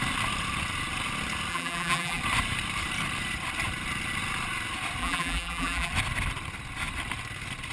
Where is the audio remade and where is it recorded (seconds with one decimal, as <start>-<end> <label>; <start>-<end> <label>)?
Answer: 0.0-1.5 recorded; 1.5-2.2 remade; 2.2-5.0 recorded; 5.0-5.9 remade; 5.9-7.7 recorded